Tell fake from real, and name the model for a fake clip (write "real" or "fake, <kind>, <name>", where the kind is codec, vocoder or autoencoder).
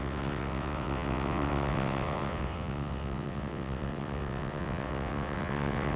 fake, vocoder, WaveNeXt